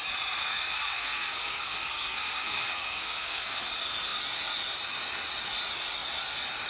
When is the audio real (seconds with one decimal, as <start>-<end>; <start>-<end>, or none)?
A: 0.0-0.4; 3.6-6.7